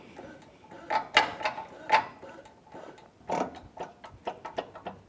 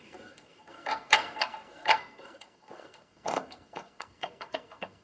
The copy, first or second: second